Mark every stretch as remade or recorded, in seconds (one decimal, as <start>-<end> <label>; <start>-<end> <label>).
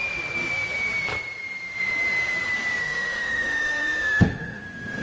0.0-2.8 recorded; 2.8-4.6 remade; 4.6-5.0 recorded